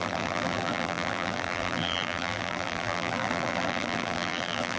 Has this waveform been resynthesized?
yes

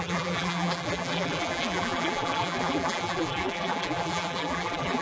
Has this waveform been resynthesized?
yes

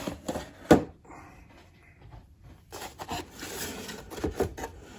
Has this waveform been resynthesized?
no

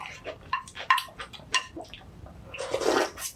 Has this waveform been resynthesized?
yes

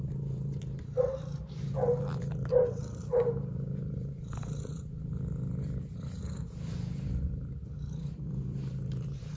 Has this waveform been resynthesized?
yes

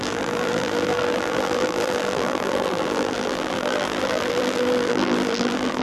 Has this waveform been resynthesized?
yes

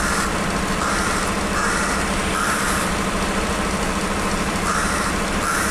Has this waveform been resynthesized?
yes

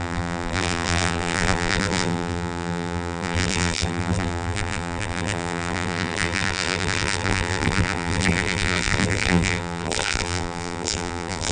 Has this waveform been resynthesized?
yes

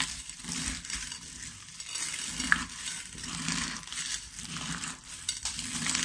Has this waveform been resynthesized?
yes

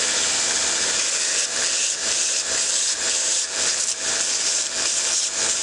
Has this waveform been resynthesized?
yes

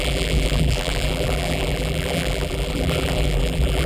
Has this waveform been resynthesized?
yes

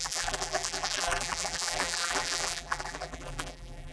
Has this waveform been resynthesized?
yes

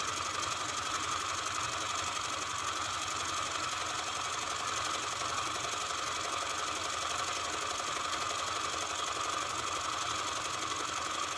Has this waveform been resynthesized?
no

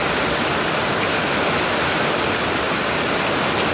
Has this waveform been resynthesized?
no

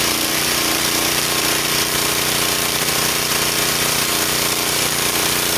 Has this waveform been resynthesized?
yes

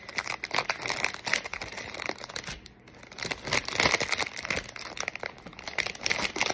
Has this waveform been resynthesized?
no